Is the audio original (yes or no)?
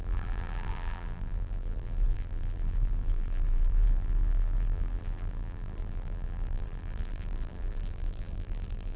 no